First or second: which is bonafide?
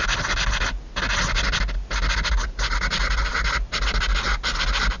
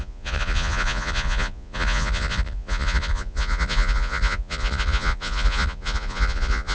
first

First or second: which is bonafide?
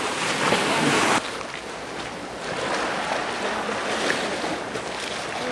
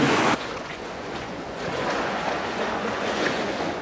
first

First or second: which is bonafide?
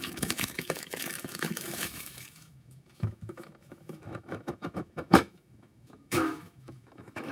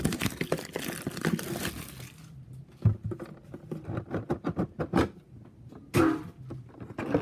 second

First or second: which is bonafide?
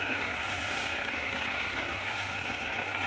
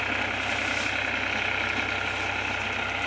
second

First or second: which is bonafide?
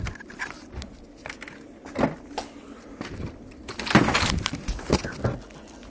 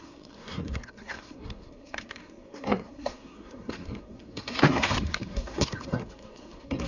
first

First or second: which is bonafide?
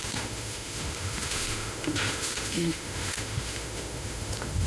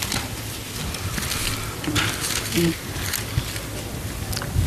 second